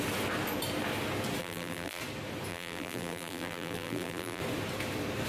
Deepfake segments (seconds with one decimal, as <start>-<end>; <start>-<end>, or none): 1.4-2.0; 2.5-4.4